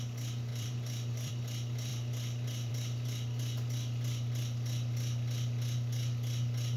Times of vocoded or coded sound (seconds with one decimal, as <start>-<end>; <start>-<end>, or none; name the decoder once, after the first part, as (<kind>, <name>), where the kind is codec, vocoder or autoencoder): 0.5-1.3 (vocoder, BigVGAN v2)